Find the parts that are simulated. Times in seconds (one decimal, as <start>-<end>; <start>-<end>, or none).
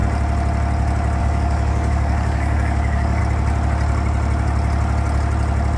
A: 1.2-3.2